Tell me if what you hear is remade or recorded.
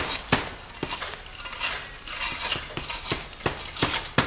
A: recorded